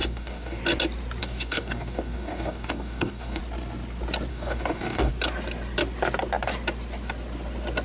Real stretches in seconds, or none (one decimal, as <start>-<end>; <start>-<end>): 0.6-1.2; 3.4-4.3; 5.1-7.8